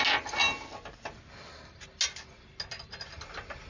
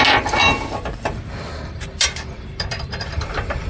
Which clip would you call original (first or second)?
first